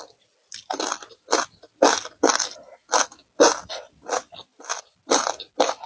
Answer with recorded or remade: recorded